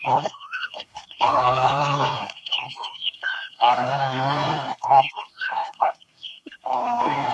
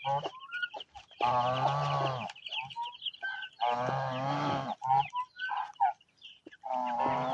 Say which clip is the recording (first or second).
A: second